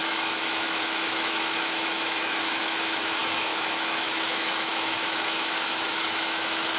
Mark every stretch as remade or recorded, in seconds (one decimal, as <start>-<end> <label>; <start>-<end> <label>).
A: 0.0-6.8 remade